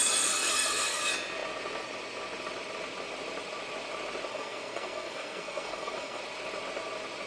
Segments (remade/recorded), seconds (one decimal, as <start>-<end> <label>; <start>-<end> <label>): 0.0-1.0 remade; 1.0-4.3 recorded; 4.3-6.2 remade; 6.2-7.3 recorded

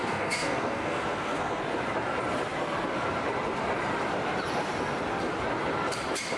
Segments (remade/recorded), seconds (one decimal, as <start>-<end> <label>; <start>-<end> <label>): 0.0-1.6 remade; 1.6-6.4 recorded

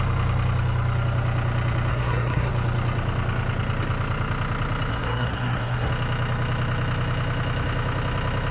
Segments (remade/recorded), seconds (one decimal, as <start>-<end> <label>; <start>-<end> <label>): 0.0-1.9 recorded; 1.9-2.5 remade; 2.5-4.9 recorded; 4.9-5.9 remade; 5.9-8.5 recorded